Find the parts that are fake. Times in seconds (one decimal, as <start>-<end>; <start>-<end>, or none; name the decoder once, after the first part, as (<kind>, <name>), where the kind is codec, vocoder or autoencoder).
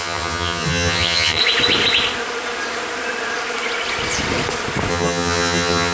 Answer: 0.0-1.4 (vocoder, HiFi-GAN); 4.9-5.9